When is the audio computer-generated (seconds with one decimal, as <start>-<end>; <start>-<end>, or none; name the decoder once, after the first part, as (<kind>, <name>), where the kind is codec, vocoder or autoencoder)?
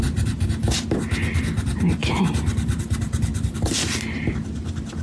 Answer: none